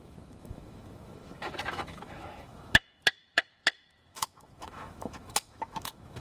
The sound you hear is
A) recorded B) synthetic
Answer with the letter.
B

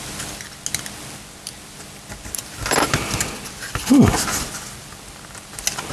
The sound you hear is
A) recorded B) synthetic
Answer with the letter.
A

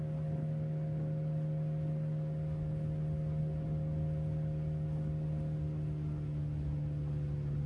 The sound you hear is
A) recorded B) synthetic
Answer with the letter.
A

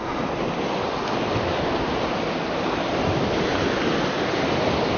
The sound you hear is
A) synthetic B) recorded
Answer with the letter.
B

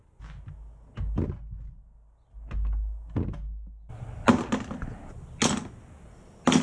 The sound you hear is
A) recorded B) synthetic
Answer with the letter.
A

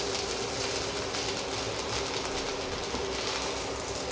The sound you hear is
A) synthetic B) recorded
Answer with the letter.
A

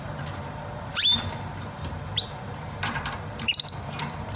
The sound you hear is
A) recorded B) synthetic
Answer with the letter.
B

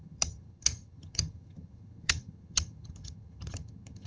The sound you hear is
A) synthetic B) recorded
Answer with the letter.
A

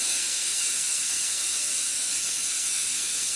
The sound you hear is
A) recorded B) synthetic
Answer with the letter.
B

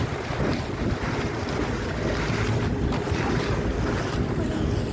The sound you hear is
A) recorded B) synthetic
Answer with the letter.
A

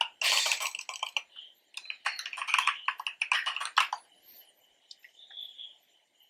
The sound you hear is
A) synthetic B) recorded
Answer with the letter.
B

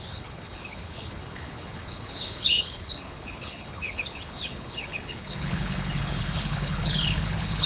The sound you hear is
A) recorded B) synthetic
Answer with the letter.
B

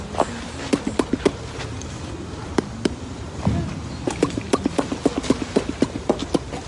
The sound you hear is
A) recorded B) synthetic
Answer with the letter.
A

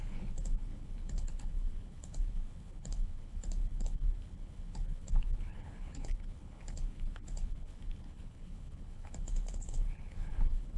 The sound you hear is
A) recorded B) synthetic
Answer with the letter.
B